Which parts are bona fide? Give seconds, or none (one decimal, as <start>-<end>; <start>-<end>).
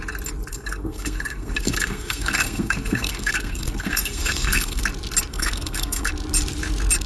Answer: 0.0-0.5; 4.8-5.3; 6.1-7.1